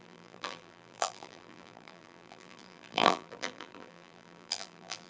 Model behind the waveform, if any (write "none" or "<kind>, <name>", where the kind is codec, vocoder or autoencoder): vocoder, BigVGAN v2